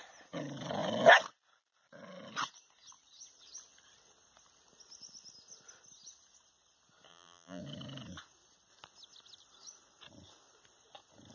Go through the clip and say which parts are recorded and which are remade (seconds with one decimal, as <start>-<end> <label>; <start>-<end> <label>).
0.0-7.1 recorded; 7.1-7.6 remade; 7.6-11.3 recorded